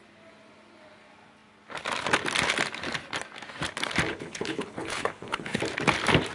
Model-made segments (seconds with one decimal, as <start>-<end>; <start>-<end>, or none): 4.1-5.6